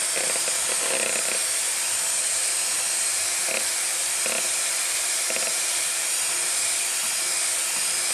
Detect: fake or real real